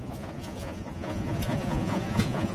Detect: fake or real fake